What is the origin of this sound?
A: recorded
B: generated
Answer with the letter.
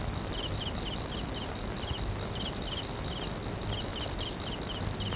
A